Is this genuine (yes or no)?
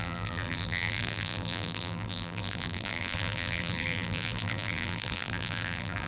no